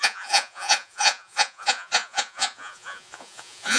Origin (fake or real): fake